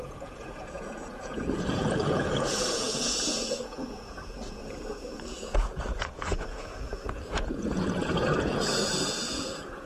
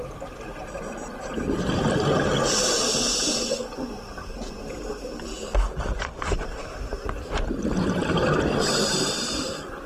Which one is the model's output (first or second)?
first